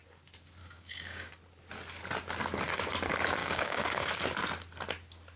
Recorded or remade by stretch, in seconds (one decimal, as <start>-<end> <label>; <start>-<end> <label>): 0.0-0.6 recorded; 0.6-1.3 remade; 1.3-3.4 recorded; 3.4-4.1 remade; 4.1-5.4 recorded